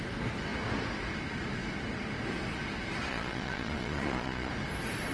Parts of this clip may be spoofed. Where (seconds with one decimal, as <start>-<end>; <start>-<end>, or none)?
3.1-4.5